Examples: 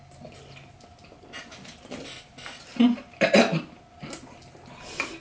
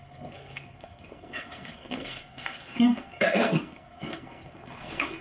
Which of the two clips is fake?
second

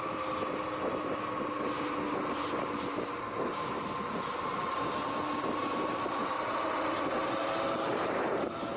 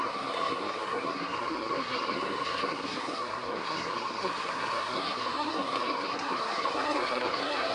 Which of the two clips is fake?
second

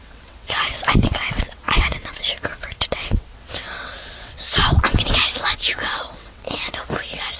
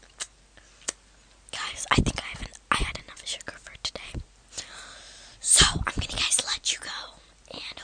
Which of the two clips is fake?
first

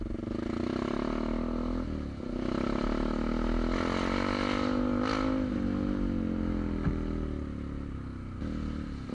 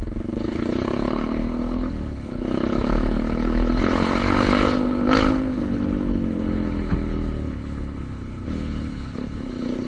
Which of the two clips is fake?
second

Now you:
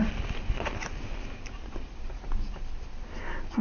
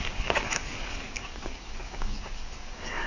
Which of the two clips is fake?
second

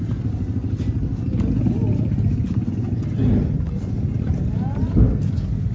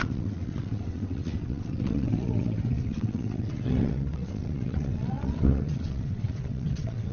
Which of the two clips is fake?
second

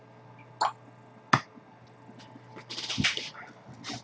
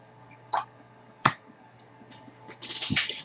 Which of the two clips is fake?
second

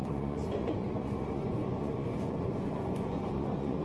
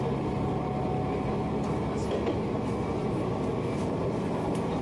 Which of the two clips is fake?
first